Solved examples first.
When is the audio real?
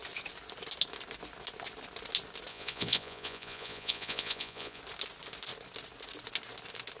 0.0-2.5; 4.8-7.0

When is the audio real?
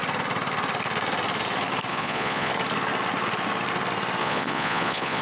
0.0-1.9; 2.5-4.2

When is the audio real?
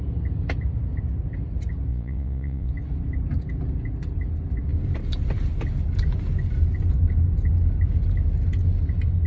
0.0-1.9; 2.7-9.3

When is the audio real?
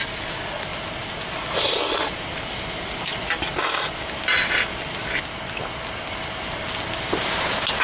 0.0-7.8